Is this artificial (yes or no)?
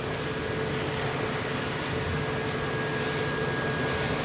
no